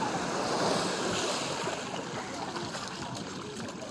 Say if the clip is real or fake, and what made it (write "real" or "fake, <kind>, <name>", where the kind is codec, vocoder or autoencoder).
real